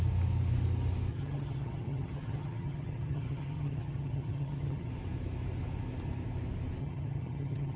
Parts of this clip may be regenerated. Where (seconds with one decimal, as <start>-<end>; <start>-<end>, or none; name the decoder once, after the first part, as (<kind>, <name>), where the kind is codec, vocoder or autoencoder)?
1.1-4.9 (vocoder, HiFi-GAN); 6.8-7.8